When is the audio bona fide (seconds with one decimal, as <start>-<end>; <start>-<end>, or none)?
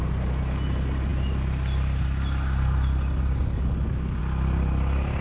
0.0-5.2